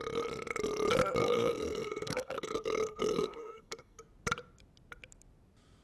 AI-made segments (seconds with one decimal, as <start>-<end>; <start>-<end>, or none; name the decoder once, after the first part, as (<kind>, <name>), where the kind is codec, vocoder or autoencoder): 1.2-4.0 (codec, SNAC)